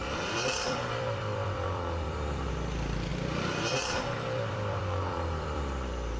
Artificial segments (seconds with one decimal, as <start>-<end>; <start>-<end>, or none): 0.0-2.5; 3.1-5.6